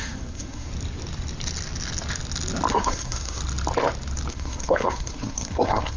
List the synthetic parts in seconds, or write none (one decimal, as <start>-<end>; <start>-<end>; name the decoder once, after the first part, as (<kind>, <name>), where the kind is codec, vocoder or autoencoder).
0.0-0.7 (codec, SNAC); 2.7-3.4; 4.3-6.0